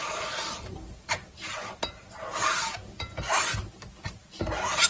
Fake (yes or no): no